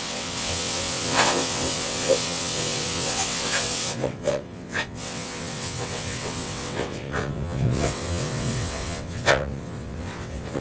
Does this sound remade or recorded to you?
remade